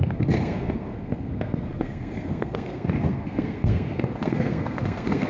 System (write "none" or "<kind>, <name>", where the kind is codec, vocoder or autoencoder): codec, SNAC